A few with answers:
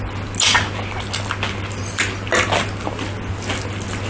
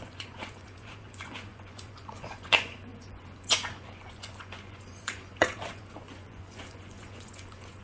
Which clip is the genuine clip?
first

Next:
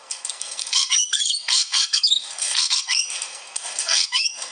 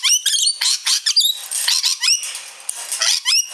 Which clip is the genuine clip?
second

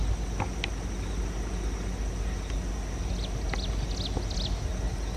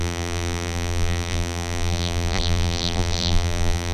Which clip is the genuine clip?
first